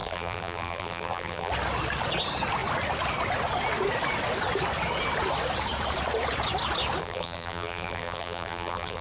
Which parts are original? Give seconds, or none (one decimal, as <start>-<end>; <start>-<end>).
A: 1.5-7.0